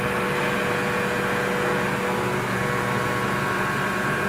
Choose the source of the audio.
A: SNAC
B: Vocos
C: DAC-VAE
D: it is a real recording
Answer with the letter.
D